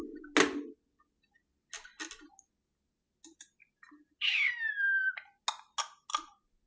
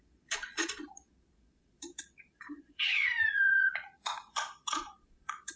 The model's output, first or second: second